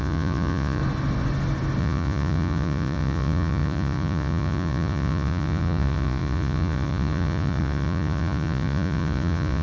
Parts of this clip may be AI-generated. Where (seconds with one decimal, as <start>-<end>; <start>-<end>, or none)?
0.0-0.8; 1.8-9.6